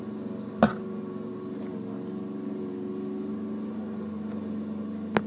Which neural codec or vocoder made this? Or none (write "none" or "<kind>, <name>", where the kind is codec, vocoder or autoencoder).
none